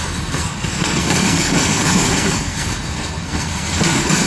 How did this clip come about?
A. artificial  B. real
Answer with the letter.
A